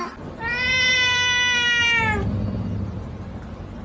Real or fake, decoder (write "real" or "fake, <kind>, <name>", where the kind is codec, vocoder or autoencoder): real